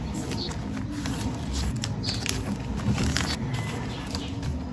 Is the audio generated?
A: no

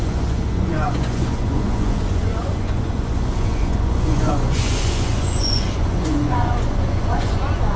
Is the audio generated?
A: yes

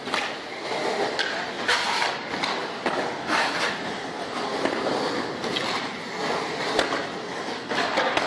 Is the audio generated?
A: no